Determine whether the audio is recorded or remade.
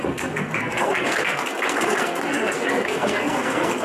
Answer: remade